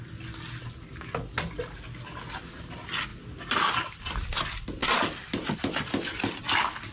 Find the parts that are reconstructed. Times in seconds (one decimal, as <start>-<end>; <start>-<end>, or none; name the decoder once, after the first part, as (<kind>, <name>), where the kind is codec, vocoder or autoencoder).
none